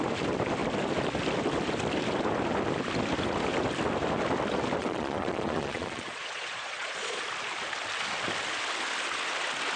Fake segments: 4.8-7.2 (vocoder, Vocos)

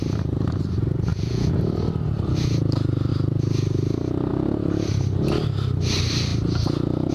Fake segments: 1.1-1.6 (vocoder, Vocos)

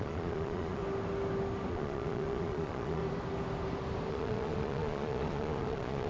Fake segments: 0.0-0.8 (vocoder, Vocos); 1.7-3.0; 4.1-6.1